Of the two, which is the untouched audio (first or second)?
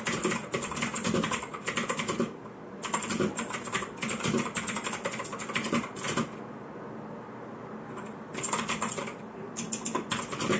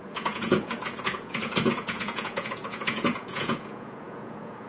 first